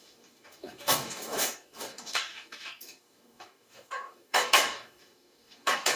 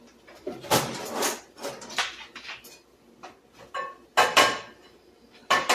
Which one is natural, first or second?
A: second